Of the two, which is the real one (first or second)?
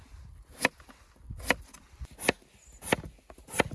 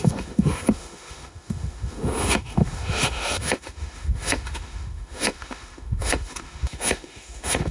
first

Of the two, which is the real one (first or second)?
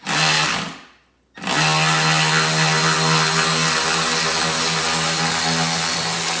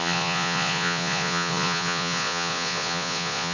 first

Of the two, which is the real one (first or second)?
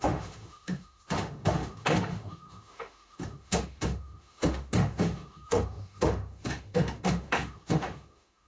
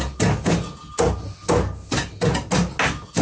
second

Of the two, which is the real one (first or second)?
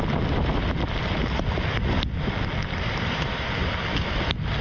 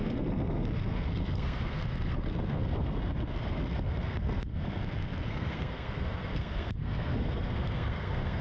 first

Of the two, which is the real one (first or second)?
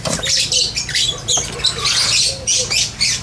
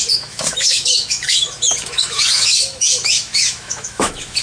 first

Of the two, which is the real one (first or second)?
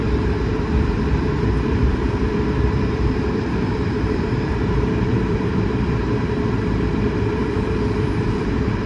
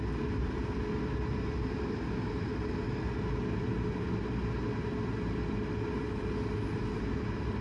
second